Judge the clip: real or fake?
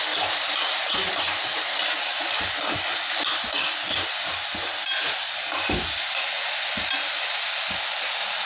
real